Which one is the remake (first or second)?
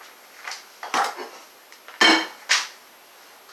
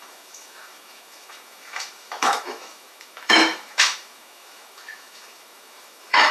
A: second